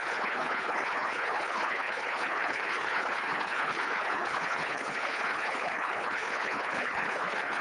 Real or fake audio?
fake